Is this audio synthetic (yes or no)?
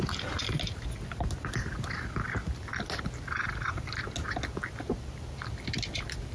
no